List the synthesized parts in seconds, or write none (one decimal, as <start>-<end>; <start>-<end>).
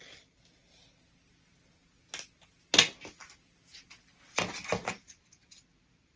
none